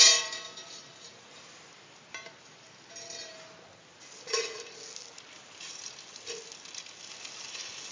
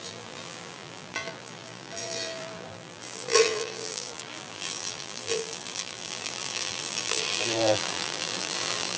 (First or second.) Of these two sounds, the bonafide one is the first